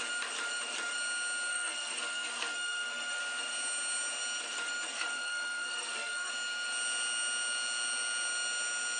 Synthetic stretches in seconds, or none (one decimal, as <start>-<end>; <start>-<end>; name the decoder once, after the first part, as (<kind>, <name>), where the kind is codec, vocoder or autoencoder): 1.5-3.2 (codec, SNAC); 4.9-6.3